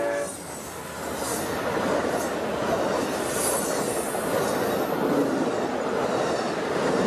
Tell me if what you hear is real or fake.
real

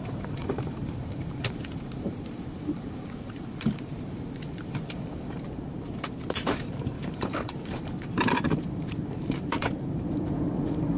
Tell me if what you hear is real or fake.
fake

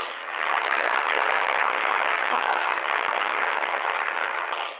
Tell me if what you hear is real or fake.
fake